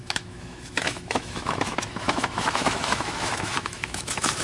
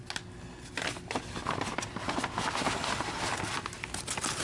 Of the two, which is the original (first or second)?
second